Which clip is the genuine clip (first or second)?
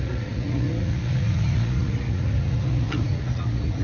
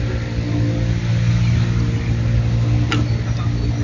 second